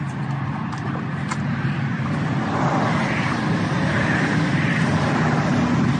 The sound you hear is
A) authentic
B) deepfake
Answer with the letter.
A